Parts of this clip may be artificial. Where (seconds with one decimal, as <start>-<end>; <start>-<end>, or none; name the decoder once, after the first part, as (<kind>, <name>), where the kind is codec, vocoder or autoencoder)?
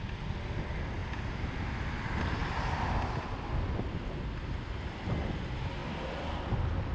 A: 2.4-4.0 (vocoder, BigVGAN v2); 5.8-6.5